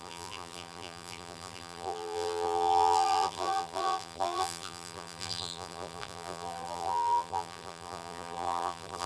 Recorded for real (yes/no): no